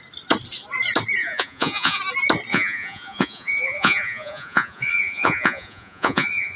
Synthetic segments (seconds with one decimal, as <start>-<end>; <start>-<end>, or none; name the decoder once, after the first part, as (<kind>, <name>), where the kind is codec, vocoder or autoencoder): 1.2-2.0 (vocoder, Vocos); 2.5-6.6